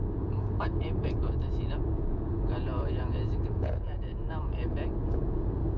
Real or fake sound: fake